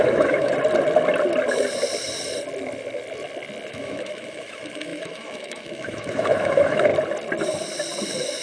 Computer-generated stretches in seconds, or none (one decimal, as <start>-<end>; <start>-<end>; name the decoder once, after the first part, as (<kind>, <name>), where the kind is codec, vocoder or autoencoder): 0.0-0.5 (autoencoder, DAC-VAE); 3.7-6.9; 8.0-8.4

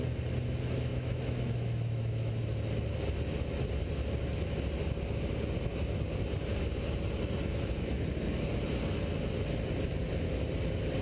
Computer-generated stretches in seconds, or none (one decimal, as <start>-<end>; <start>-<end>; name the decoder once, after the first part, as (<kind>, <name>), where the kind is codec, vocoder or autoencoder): 0.9-2.4 (autoencoder, DAC-VAE)

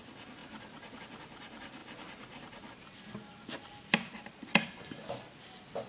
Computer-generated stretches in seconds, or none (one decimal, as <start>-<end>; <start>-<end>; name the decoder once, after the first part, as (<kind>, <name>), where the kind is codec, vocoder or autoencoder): 4.5-5.0 (autoencoder, DAC-VAE)

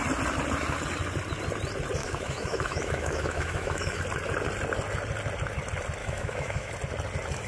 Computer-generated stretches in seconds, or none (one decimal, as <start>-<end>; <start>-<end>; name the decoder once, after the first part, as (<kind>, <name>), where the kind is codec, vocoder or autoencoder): 2.0-4.0 (autoencoder, DAC-VAE); 6.0-6.7

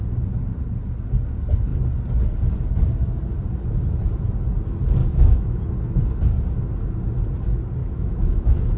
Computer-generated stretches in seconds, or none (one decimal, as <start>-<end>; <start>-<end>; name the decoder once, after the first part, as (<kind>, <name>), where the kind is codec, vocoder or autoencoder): 5.0-5.6 (autoencoder, DAC-VAE); 7.8-8.8

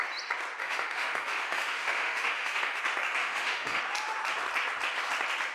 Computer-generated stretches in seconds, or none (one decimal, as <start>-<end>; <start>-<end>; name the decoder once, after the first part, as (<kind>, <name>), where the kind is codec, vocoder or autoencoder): 0.6-2.8 (autoencoder, DAC-VAE); 3.2-3.8